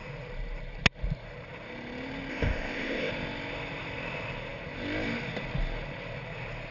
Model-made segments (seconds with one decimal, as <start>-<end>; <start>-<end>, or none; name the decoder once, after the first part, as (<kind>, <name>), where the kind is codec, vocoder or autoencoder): 2.3-3.1 (codec, ZipCodec)